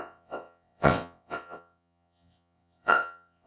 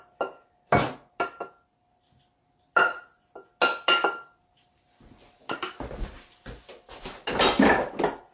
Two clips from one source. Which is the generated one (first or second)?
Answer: first